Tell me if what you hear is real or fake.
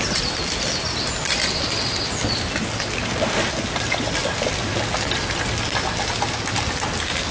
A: real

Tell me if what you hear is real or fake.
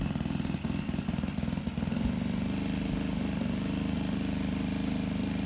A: real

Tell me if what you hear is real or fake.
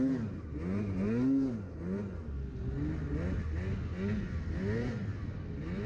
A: real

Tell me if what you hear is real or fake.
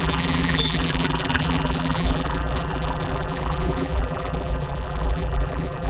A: fake